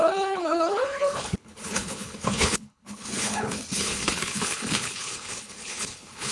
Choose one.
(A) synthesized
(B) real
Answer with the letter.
A